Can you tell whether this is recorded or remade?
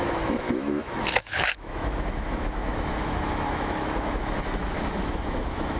remade